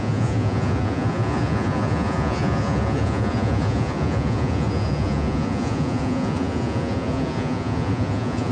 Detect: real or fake fake